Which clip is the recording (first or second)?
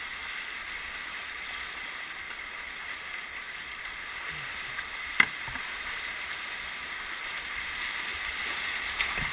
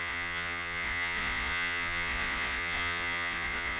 first